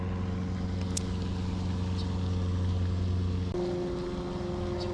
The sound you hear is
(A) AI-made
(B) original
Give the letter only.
B